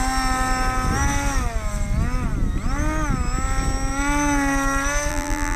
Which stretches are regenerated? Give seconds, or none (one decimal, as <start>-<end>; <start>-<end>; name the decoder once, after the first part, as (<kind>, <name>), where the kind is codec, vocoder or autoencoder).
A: 5.1-5.6 (vocoder, BigVGAN v2)